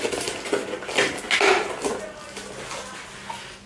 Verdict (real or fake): real